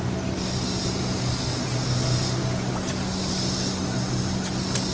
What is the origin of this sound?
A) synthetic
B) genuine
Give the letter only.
B